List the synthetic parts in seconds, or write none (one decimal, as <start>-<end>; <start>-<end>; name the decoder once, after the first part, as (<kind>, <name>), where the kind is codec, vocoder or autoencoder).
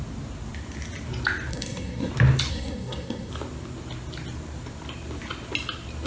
1.5-2.1 (codec, SNAC); 2.5-3.3